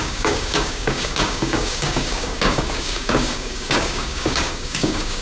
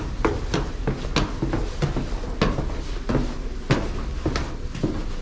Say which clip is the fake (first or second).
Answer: first